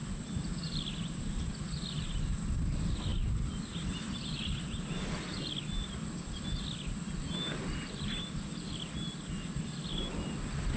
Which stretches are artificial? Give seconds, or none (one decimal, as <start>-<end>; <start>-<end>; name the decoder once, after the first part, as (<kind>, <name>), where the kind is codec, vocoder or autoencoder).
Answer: none